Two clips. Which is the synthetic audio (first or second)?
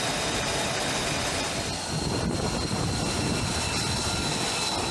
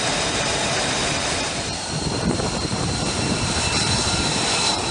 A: second